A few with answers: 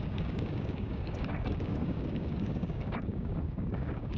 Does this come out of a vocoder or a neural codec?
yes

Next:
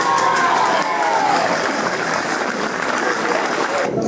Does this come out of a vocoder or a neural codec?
yes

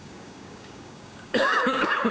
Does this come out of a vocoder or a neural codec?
yes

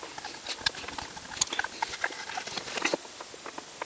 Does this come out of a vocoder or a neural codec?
no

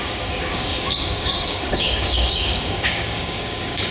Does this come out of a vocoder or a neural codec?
yes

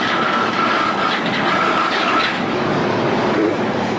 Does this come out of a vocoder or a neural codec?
yes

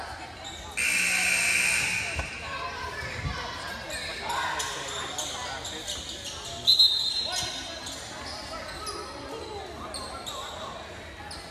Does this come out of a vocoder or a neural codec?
no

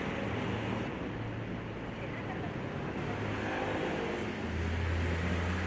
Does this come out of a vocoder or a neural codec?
no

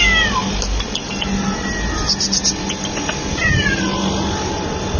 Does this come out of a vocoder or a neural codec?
no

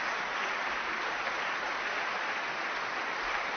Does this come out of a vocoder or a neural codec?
no